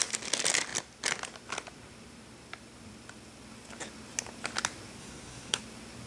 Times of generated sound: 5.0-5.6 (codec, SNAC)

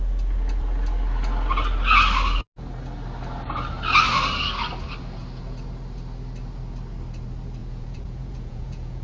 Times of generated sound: 7.6-9.0 (vocoder, Vocos)

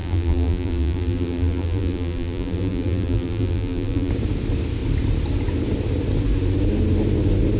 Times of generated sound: 0.0-4.1 (vocoder, BigVGAN v2)

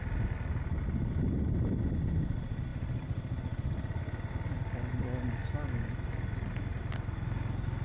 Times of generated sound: 5.4-6.3 (autoencoder, DAC-VAE)

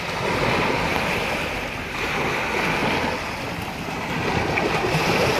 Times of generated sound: none

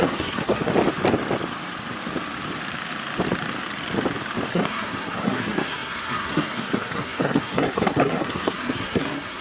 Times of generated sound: 0.0-0.7 (codec, SNAC); 4.5-9.4